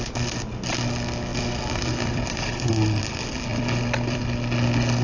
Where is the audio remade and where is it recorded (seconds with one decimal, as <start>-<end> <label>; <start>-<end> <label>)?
0.0-1.3 recorded; 1.3-2.7 remade; 2.7-3.5 recorded; 3.5-4.2 remade; 4.2-5.0 recorded